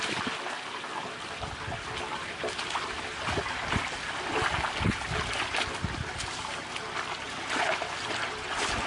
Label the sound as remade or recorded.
recorded